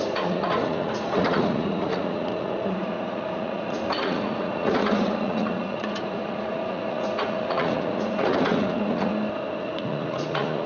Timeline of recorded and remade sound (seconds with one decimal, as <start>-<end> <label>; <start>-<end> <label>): 0.0-9.1 remade; 9.1-9.6 recorded; 9.6-10.7 remade